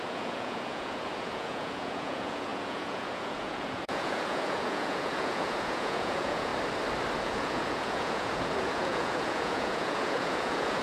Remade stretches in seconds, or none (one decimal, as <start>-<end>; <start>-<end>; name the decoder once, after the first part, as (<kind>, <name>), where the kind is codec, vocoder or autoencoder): 0.0-6.5 (vocoder, Vocos); 7.2-10.8